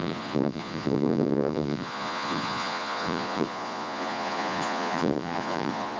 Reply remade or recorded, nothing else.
remade